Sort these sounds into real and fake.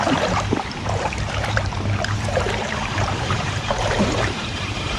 fake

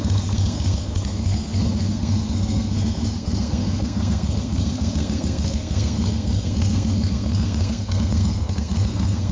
fake